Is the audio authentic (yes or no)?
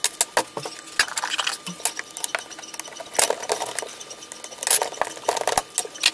yes